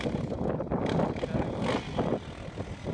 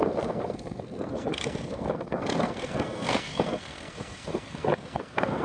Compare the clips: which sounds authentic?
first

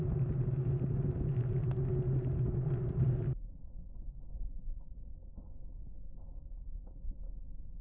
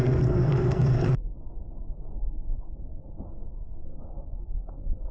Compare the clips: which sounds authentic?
first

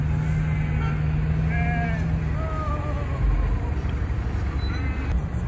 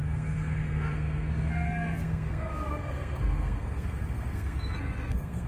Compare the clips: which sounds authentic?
first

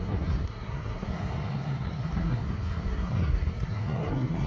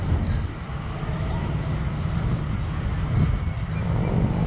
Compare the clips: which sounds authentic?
second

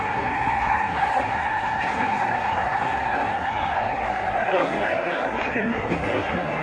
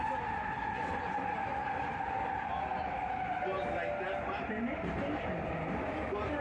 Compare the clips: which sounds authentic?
second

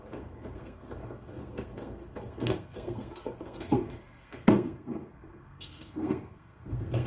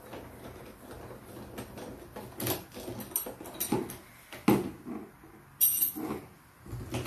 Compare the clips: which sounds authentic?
second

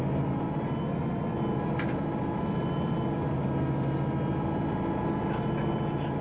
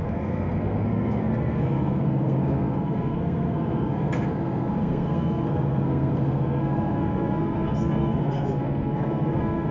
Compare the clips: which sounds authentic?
first